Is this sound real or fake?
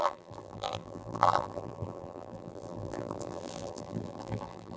fake